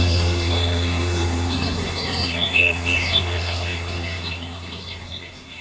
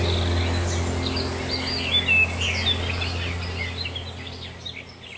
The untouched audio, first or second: second